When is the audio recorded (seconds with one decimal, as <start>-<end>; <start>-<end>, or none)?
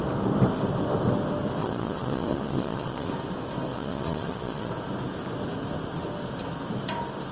0.0-1.6; 3.1-3.7; 4.7-7.3